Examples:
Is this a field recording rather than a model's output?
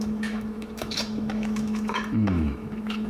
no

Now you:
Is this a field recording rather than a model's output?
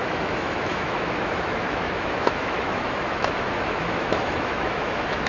no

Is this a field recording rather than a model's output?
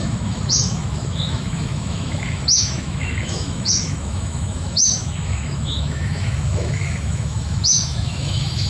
no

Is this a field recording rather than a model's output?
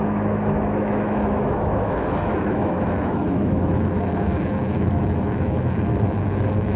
no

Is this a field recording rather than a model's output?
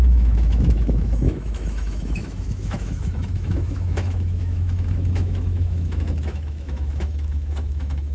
no